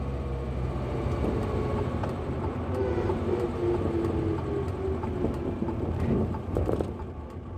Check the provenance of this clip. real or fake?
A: real